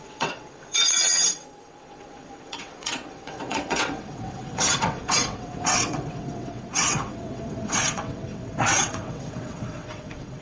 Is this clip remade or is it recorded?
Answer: remade